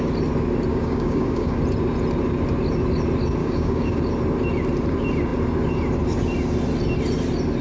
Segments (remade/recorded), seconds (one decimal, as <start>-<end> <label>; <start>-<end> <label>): 0.0-0.7 recorded; 0.7-1.6 remade; 1.6-3.4 recorded; 3.4-4.0 remade; 4.0-7.6 recorded